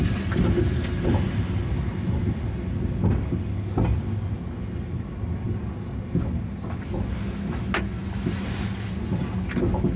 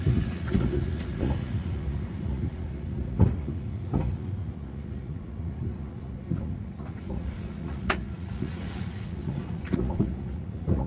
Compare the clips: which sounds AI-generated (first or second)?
second